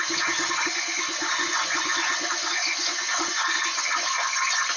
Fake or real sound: fake